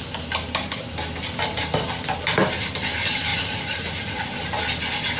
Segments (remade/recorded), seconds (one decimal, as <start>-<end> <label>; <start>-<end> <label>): 0.0-3.3 recorded; 3.3-4.3 remade; 4.3-5.2 recorded